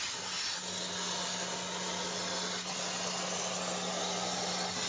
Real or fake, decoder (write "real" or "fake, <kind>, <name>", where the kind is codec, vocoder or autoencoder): real